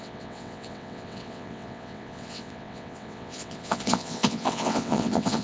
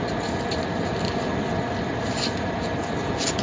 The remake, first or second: first